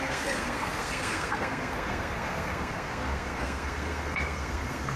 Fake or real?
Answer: fake